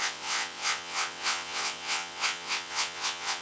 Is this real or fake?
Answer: fake